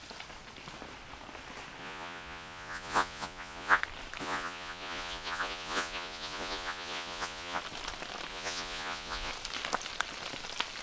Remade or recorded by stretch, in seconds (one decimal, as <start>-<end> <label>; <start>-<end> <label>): 0.0-1.8 recorded; 1.8-3.8 remade; 3.8-4.2 recorded; 4.2-7.6 remade; 7.6-8.3 recorded; 8.3-9.3 remade; 9.3-10.8 recorded